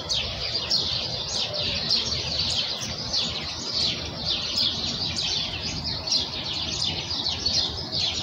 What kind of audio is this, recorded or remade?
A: recorded